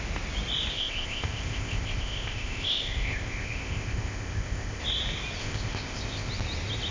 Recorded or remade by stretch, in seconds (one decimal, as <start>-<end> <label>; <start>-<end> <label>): 0.0-0.7 recorded; 0.7-4.8 remade; 4.8-5.4 recorded; 5.4-6.3 remade; 6.3-6.9 recorded